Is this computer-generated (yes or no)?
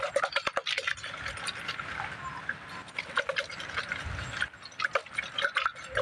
no